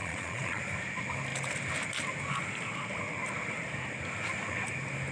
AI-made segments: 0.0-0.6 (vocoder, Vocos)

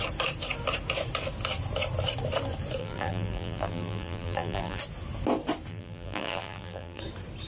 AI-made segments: 2.8-4.8 (vocoder, BigVGAN v2); 5.7-7.0

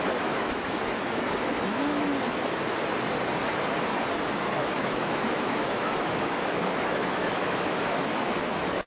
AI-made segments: 0.0-2.1 (autoencoder, DAC-VAE); 4.3-8.9

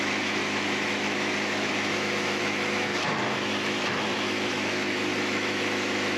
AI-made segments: 0.0-6.2 (autoencoder, DAC-VAE)

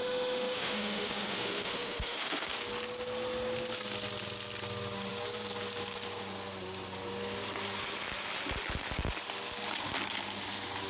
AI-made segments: 0.0-2.5 (autoencoder, DAC-VAE)